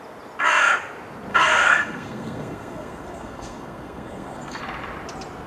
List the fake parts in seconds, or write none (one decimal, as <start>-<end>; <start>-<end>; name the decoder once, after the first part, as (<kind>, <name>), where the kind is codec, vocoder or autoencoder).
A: 1.3-4.6 (codec, SNAC)